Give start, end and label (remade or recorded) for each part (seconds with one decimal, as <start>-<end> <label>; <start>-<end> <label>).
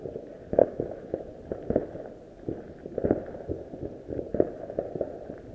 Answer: 0.0-0.6 recorded; 0.6-1.3 remade; 1.3-5.5 recorded